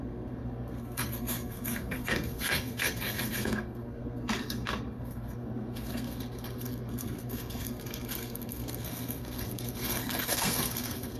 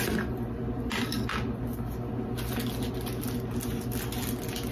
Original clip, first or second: second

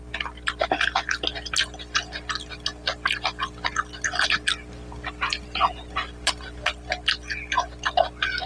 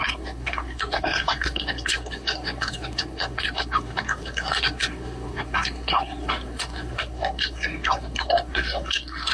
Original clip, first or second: first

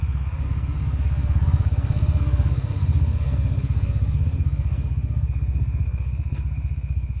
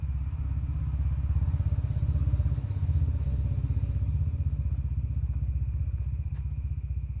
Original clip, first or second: second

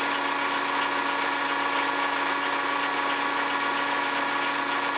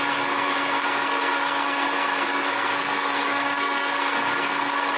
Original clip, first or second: first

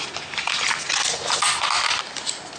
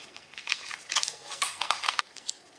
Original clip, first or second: first